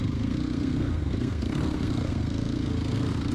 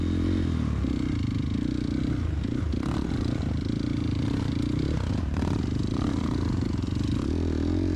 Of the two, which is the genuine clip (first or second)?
second